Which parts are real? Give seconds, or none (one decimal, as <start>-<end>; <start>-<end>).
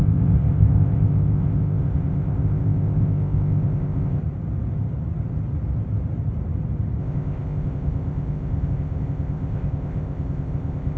4.2-7.0